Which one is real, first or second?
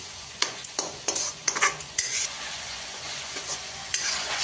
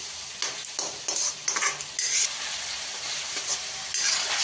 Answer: second